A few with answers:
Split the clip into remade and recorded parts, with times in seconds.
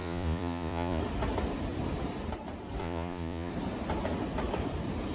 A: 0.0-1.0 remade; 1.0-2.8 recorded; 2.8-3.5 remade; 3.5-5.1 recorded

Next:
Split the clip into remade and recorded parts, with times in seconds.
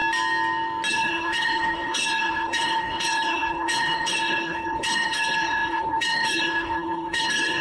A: 0.0-0.9 recorded; 0.9-7.6 remade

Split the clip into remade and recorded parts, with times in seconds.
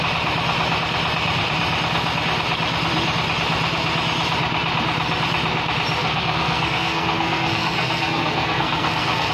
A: 0.0-6.0 recorded; 6.0-9.3 remade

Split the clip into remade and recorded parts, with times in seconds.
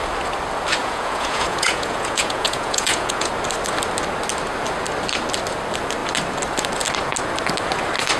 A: 0.0-0.8 recorded; 0.8-3.3 remade; 3.3-8.2 recorded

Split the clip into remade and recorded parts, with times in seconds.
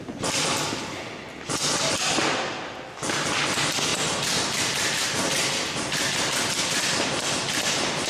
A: 0.0-8.1 recorded